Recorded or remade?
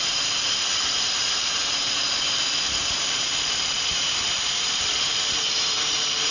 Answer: remade